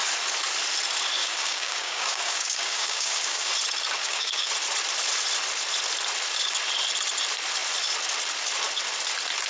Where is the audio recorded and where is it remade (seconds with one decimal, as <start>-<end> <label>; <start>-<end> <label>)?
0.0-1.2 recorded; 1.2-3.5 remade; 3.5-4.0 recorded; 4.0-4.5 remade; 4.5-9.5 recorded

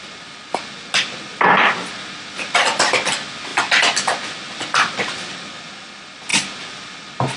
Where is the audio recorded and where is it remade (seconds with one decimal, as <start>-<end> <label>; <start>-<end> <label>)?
0.0-7.4 recorded

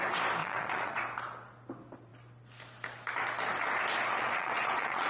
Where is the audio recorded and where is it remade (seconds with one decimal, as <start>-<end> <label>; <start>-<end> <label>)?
0.0-0.4 recorded; 0.4-1.0 remade; 1.0-4.2 recorded; 4.2-5.1 remade

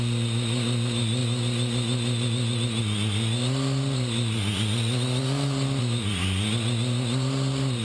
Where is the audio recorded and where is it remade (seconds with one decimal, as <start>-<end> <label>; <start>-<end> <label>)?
0.0-7.8 recorded

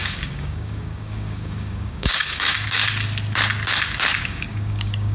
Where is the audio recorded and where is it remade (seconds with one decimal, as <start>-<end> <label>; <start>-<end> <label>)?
0.0-2.8 remade; 2.8-4.2 recorded; 4.2-5.1 remade

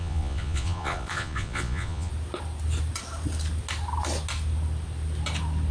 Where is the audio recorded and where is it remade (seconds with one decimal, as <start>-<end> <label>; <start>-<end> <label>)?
0.0-2.1 remade; 2.1-5.7 recorded